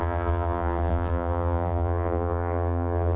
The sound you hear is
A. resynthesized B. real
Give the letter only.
A